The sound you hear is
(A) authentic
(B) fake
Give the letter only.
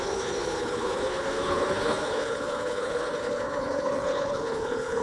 B